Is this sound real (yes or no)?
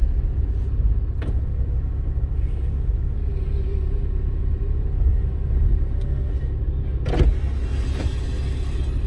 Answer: yes